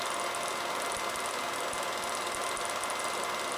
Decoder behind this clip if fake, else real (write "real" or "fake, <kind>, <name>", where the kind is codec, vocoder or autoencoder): real